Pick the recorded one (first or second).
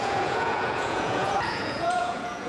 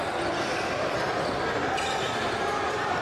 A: second